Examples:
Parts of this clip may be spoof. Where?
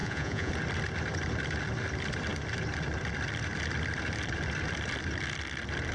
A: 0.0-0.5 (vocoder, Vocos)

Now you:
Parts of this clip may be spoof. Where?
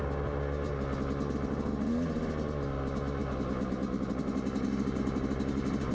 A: none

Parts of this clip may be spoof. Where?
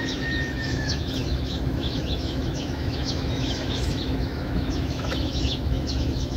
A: 0.0-6.4 (autoencoder, DAC-VAE)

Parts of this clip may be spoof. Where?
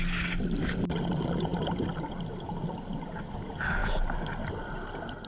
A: none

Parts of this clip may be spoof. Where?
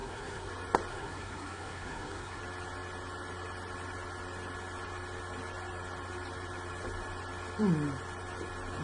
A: 0.0-0.5 (codec, SNAC); 0.9-2.4